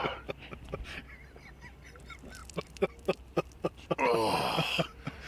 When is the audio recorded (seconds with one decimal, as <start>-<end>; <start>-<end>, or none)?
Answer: 0.0-2.4